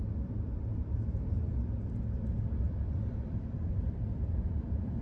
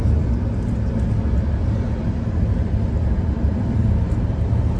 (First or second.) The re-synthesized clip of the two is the first